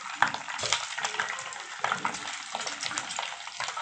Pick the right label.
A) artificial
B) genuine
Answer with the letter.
B